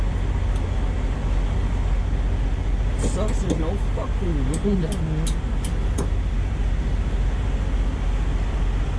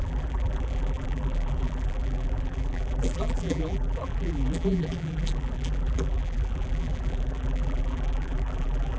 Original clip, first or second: first